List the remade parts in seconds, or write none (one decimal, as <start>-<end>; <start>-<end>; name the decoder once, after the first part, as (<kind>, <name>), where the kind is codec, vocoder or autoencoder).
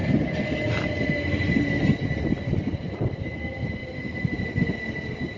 none